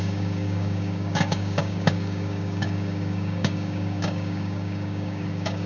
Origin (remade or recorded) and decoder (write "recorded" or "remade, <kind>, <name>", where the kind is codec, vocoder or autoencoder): remade, codec, DAC